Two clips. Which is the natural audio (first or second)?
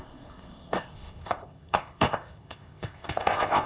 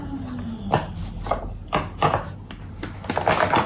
second